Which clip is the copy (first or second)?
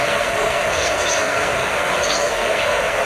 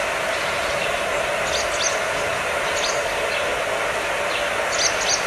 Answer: first